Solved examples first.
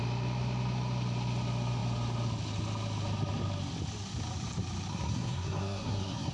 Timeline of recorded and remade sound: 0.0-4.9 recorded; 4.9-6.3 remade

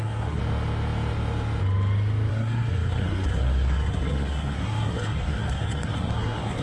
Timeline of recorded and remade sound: 0.0-0.4 remade; 0.4-2.3 recorded; 2.3-6.6 remade

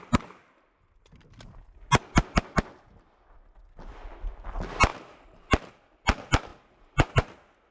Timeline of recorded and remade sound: 0.0-7.7 recorded

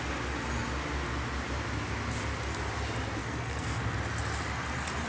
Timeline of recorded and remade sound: 0.0-3.2 recorded; 3.2-3.8 remade; 3.8-5.1 recorded